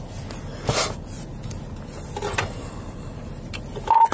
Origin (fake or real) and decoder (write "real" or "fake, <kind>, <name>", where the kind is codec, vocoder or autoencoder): real